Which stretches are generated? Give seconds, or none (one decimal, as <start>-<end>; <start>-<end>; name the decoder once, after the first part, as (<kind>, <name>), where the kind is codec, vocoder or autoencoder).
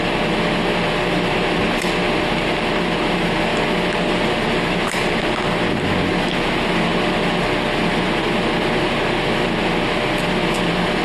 none